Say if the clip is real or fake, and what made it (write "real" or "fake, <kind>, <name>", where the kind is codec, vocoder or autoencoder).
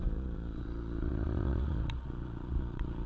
fake, vocoder, Vocos